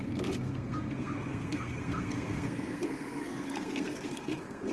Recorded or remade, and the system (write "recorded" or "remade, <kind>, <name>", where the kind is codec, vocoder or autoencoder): remade, codec, SNAC